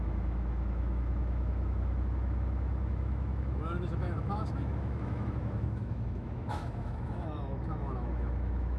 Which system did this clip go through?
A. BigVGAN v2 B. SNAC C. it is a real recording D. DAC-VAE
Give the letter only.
D